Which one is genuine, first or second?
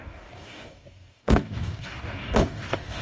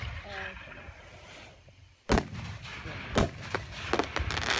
second